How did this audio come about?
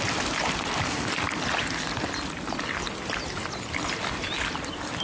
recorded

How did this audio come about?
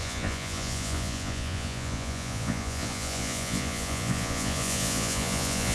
remade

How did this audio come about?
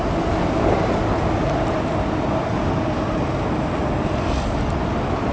recorded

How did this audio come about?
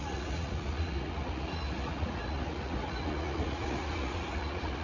remade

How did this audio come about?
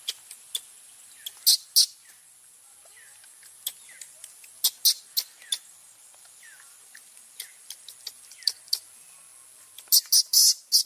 recorded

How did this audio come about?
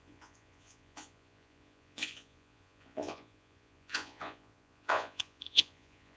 remade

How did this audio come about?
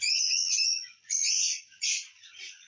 remade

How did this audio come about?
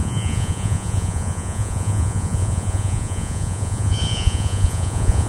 remade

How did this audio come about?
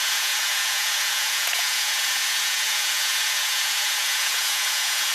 remade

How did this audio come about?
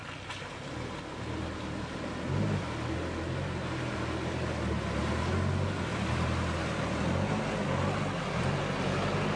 recorded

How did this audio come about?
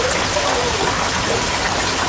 recorded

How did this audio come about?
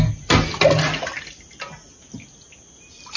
recorded